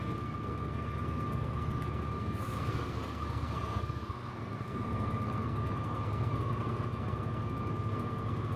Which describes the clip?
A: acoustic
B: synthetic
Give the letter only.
B